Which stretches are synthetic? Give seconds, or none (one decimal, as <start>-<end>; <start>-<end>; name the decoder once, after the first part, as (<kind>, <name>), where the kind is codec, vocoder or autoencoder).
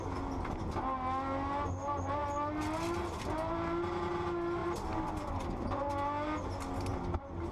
4.6-5.9 (vocoder, BigVGAN v2)